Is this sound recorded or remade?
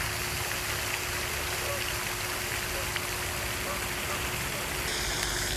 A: recorded